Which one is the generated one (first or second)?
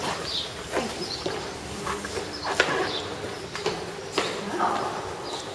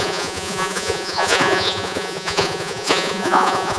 second